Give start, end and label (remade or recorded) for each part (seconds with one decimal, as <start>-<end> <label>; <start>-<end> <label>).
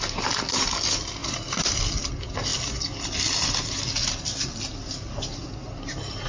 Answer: 0.0-6.3 recorded